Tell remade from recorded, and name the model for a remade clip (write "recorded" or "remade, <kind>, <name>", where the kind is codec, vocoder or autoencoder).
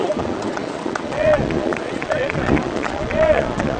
remade, vocoder, Vocos